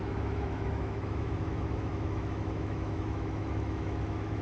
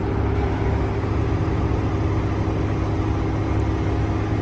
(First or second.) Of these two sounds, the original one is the second